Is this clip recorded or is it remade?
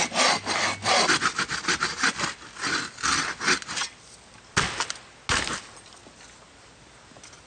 recorded